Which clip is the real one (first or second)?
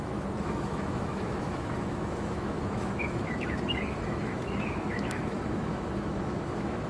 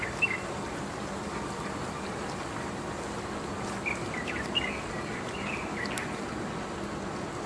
second